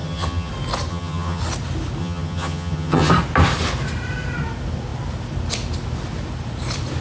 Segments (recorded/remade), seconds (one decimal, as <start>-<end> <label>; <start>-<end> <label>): 0.0-0.5 remade; 0.5-0.9 recorded; 0.9-1.4 remade; 1.4-2.0 recorded; 2.0-3.1 remade; 3.1-7.0 recorded